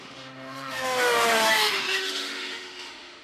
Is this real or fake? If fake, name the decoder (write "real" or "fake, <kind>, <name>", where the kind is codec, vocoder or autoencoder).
fake, autoencoder, DAC-VAE